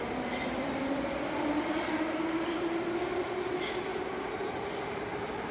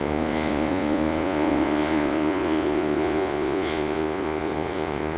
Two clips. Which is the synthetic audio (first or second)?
second